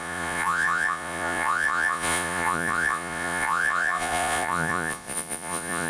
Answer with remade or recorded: remade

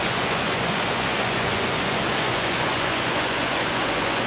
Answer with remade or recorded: remade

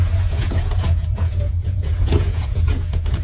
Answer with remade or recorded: remade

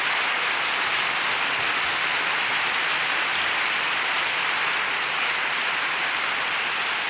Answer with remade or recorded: recorded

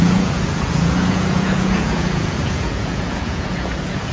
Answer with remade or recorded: remade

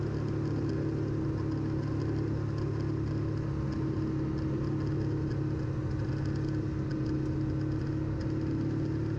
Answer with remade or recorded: recorded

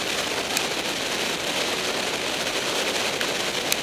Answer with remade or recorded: recorded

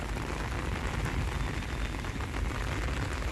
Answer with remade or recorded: recorded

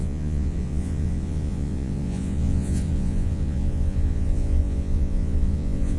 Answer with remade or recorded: remade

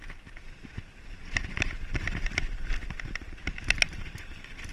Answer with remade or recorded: recorded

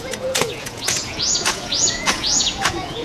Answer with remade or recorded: remade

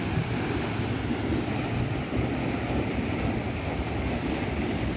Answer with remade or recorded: recorded